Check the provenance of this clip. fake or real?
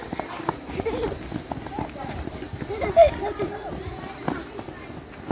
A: real